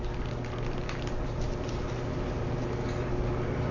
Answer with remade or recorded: recorded